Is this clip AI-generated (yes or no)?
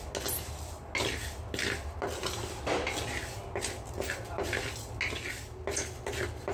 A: no